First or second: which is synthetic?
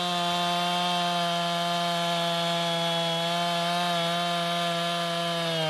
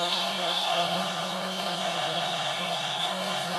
second